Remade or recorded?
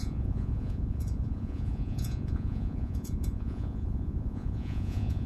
remade